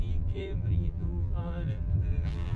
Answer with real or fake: fake